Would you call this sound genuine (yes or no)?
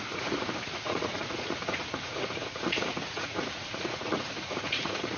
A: no